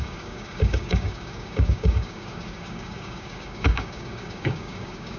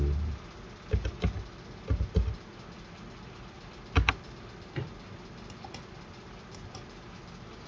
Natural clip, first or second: second